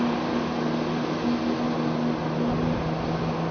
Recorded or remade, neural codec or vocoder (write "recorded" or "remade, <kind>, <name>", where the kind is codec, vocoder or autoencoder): recorded